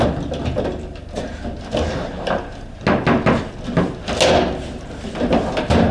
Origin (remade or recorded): recorded